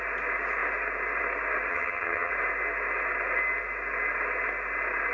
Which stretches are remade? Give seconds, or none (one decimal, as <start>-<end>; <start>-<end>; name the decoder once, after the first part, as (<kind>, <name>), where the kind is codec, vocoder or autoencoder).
1.7-2.3 (vocoder, HiFi-GAN)